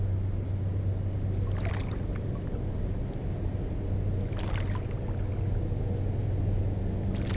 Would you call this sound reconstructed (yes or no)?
no